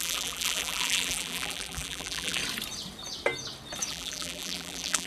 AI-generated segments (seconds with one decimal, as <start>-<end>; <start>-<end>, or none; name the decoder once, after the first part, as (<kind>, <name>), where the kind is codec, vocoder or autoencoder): 0.0-2.4 (vocoder, BigVGAN v2); 3.9-5.1